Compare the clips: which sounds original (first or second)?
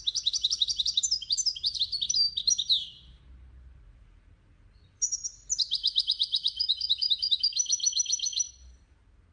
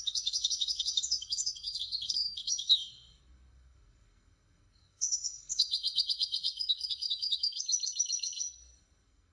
first